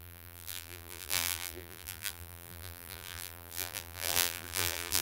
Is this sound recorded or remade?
remade